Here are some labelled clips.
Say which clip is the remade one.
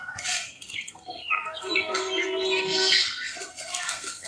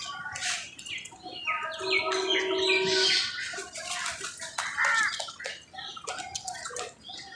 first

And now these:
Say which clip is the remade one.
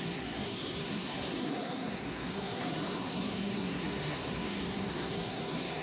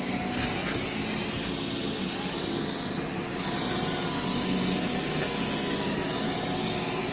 first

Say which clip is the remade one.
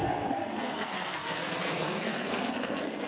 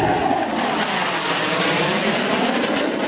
first